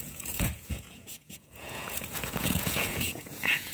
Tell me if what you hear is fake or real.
fake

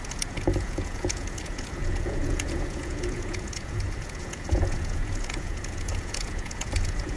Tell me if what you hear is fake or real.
fake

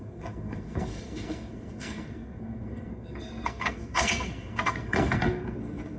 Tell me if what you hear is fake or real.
fake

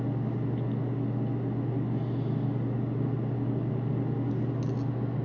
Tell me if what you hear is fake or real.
real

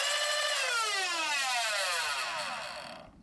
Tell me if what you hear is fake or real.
real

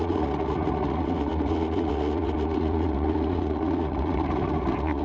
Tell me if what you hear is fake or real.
fake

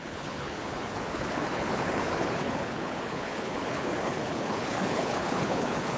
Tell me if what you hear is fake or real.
fake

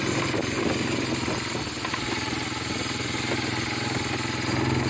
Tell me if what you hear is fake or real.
real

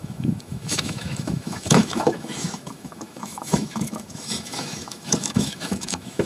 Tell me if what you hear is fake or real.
fake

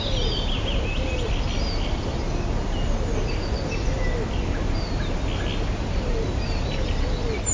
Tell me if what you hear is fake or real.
real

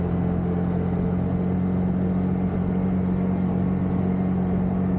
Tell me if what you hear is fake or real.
real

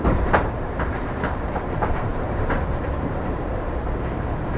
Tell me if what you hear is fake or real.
fake